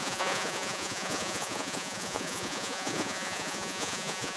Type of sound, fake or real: fake